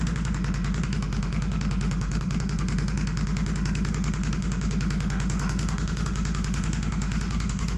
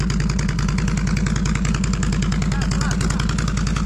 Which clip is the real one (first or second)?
second